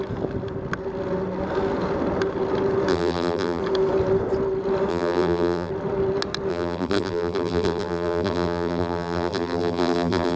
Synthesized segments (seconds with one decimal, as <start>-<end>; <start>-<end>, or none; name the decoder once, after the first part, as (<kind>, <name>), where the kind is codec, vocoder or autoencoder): 2.9-3.6 (vocoder, BigVGAN v2); 4.9-5.7; 6.5-10.4